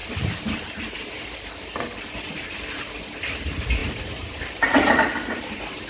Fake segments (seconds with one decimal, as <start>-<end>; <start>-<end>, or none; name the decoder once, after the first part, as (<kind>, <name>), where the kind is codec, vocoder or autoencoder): 0.0-0.8 (vocoder, BigVGAN v2); 3.8-5.4